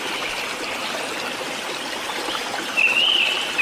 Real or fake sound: real